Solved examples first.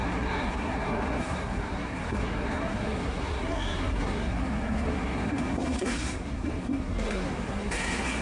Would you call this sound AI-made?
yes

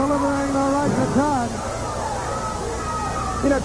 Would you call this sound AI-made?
no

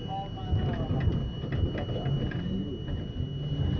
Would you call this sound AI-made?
no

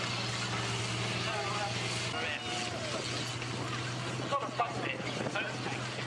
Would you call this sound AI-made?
no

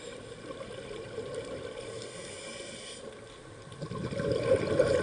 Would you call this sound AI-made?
no